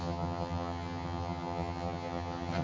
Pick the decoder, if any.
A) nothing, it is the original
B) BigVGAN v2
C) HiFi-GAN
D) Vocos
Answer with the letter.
C